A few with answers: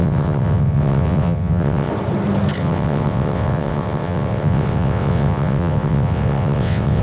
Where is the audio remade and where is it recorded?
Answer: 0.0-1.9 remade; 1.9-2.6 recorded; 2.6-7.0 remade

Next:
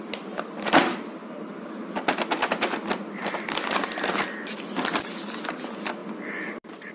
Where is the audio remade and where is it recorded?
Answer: 0.0-2.8 recorded; 2.8-5.5 remade; 5.5-6.0 recorded; 6.0-6.9 remade

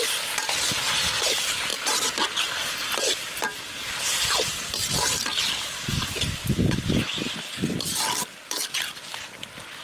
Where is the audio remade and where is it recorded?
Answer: 0.0-9.8 recorded

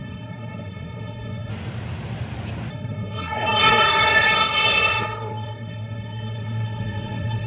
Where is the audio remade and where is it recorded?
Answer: 0.0-1.5 remade; 1.5-2.7 recorded; 2.7-7.5 remade

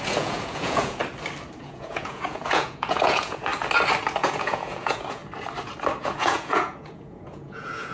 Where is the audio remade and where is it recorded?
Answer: 0.0-1.0 remade; 1.0-1.6 recorded; 1.6-3.5 remade; 3.5-4.2 recorded; 4.2-5.2 remade; 5.2-6.0 recorded; 6.0-7.9 remade

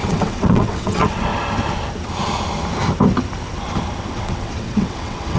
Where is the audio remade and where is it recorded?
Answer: 0.0-1.3 remade; 1.3-4.0 recorded; 4.0-5.4 remade

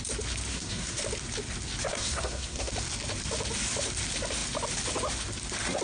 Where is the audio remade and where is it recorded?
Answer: 0.0-0.5 recorded; 0.5-1.0 remade; 1.0-1.9 recorded; 1.9-2.7 remade; 2.7-5.8 recorded

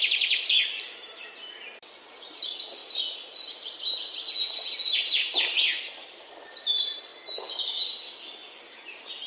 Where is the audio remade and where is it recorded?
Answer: 0.0-7.1 remade; 7.1-8.7 recorded; 8.7-9.3 remade